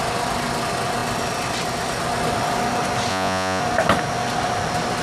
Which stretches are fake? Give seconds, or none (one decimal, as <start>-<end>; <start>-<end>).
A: 3.1-3.6